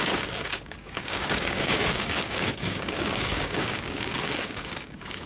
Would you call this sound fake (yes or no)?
yes